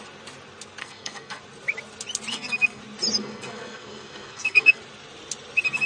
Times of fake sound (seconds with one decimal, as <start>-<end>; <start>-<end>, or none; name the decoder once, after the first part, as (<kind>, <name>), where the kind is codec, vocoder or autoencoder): 0.8-1.4 (codec, SNAC); 2.3-2.8; 3.2-4.8